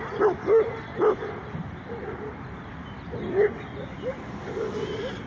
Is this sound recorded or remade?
recorded